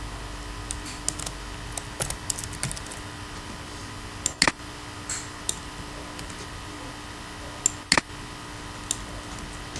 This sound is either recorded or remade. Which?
recorded